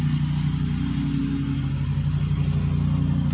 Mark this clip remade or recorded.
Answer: recorded